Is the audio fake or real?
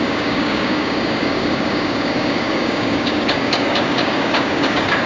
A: fake